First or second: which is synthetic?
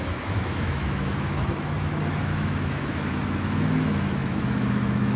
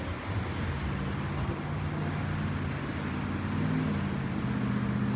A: first